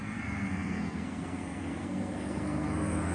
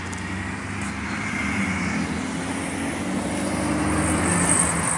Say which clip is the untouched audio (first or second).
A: second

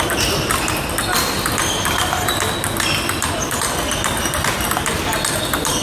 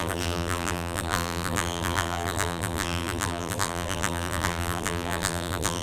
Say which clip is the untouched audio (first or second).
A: first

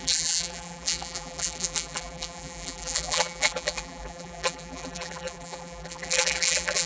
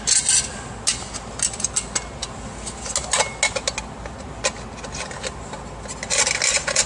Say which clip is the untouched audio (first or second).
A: second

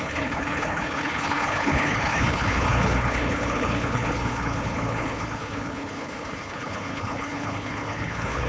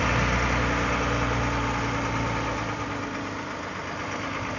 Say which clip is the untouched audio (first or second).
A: second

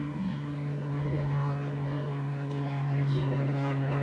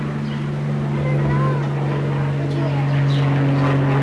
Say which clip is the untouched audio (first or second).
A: second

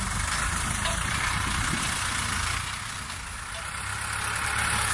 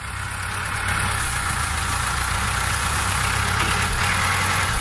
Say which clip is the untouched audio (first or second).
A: first